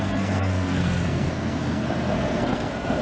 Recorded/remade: remade